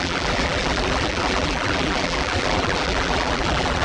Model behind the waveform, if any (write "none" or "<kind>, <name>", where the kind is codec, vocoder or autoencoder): vocoder, BigVGAN v2